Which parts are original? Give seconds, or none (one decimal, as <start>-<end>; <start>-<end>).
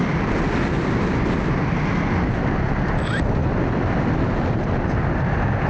0.0-5.7